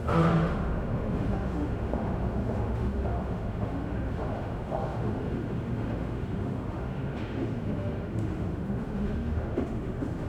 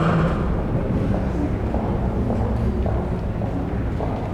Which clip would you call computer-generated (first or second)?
first